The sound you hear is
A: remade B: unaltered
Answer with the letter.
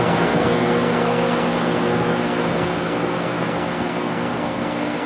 A